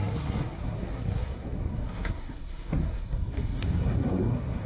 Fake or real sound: fake